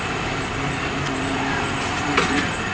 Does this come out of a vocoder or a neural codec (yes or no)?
no